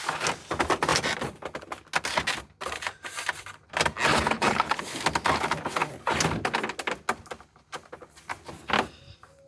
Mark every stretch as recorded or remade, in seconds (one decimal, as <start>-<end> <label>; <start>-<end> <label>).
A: 0.0-4.1 recorded; 4.1-4.8 remade; 4.8-9.5 recorded